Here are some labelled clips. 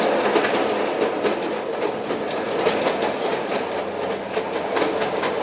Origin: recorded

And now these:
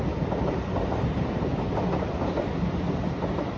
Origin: recorded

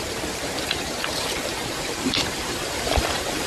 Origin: remade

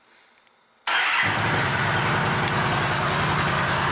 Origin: recorded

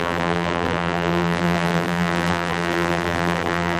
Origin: remade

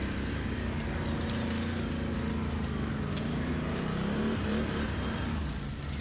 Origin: recorded